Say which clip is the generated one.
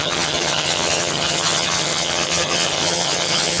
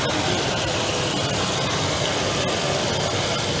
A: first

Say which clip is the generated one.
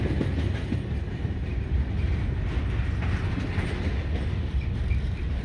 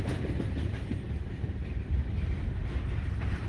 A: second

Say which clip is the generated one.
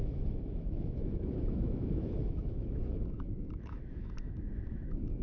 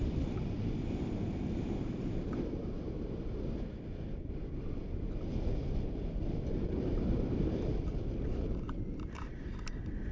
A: first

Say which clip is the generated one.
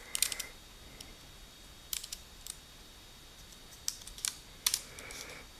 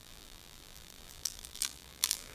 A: second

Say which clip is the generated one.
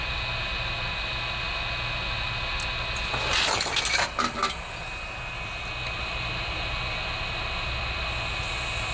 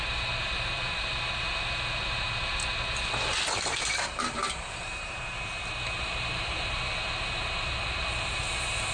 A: second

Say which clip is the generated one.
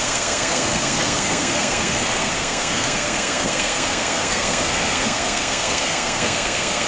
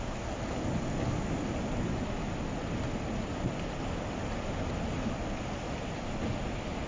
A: first